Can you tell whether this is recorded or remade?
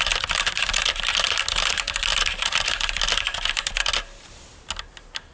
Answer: recorded